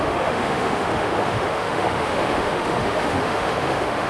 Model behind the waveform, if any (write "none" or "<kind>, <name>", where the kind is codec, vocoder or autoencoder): autoencoder, DAC-VAE